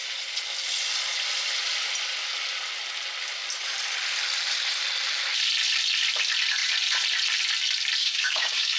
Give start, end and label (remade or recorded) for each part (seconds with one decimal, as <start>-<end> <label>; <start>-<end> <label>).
0.0-8.0 recorded; 8.0-8.8 remade